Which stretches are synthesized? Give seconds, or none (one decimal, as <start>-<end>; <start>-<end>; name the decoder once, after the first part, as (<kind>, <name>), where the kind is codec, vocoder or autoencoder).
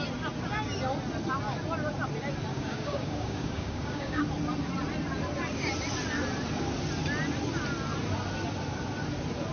2.5-4.2 (codec, DAC)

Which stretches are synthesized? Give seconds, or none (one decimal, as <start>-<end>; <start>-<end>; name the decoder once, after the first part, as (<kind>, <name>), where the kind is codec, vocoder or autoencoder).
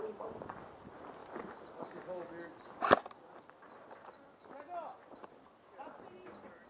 none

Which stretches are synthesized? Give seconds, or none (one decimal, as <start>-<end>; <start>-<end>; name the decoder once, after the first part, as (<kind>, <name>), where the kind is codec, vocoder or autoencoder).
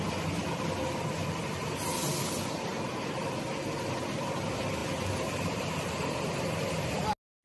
none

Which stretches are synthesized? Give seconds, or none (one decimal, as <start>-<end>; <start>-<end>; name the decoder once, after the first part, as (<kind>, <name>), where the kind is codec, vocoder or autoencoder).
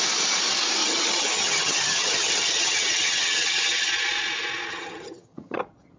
0.8-3.9 (vocoder, HiFi-GAN); 4.7-5.6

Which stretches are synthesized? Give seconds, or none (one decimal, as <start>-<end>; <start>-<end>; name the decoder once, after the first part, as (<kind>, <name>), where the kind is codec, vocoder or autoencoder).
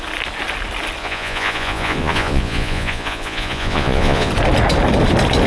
1.0-4.3 (vocoder, Vocos)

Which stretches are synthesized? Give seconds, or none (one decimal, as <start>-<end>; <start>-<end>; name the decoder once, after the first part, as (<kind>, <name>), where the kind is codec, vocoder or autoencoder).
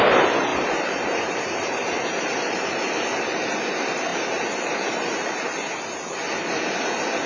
0.5-3.3 (vocoder, BigVGAN v2); 4.1-6.3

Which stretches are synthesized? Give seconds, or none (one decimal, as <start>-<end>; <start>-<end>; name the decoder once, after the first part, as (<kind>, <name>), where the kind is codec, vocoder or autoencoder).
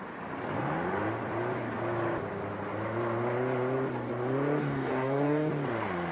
4.6-5.5 (codec, DAC)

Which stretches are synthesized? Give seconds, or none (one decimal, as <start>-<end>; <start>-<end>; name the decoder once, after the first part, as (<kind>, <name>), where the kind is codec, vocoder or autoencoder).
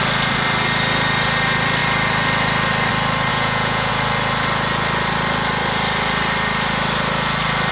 3.3-3.9 (vocoder, Vocos)